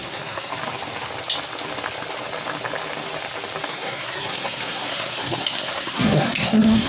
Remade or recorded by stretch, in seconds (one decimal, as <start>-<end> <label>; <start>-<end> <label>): 0.0-0.5 remade; 0.5-3.7 recorded; 3.7-6.9 remade